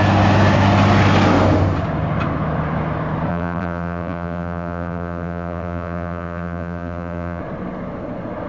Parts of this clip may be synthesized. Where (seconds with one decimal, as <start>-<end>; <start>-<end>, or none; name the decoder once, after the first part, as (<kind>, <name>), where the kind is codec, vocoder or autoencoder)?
3.3-7.4 (vocoder, BigVGAN v2)